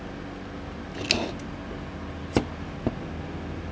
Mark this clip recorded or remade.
recorded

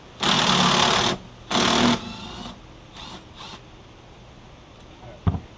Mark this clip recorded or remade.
recorded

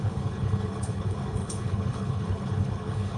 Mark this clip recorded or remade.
remade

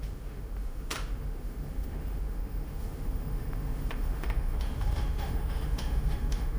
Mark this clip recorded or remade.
remade